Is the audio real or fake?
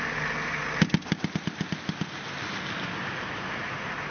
real